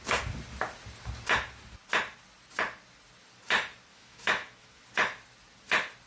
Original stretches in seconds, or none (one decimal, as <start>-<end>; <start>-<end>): 0.0-3.9; 4.8-6.1